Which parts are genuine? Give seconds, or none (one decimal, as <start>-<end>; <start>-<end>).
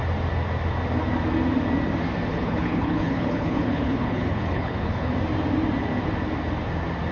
0.0-2.3; 5.1-7.1